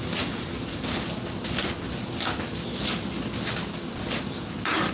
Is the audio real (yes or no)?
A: yes